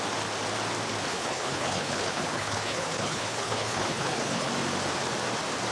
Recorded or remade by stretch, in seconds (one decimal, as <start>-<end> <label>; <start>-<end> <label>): 0.0-1.1 recorded; 1.1-4.5 remade; 4.5-5.7 recorded